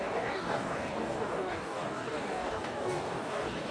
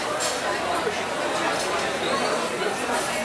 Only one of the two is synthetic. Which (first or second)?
first